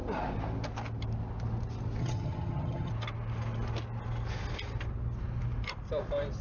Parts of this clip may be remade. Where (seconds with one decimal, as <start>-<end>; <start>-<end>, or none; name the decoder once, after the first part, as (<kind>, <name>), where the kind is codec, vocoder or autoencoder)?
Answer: 2.0-2.9 (vocoder, HiFi-GAN)